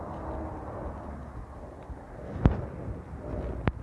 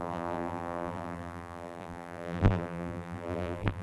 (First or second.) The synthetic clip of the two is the second